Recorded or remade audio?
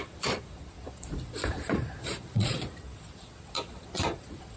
remade